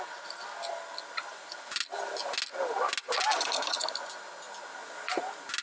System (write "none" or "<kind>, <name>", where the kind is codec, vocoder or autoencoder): none